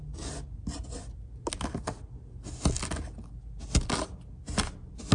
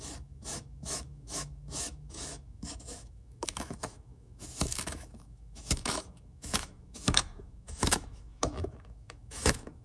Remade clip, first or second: second